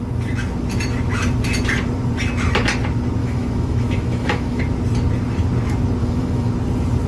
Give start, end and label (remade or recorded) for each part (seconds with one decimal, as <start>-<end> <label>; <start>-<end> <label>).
0.0-3.2 recorded; 3.2-4.6 remade; 4.6-6.0 recorded; 6.0-6.5 remade; 6.5-7.1 recorded